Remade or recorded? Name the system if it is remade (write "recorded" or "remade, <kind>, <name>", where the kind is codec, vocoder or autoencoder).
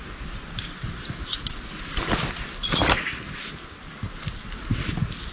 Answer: recorded